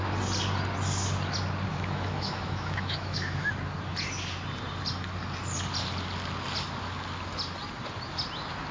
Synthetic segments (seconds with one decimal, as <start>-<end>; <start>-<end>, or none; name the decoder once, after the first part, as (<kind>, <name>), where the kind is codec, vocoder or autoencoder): 1.7-3.5 (autoencoder, DAC-VAE)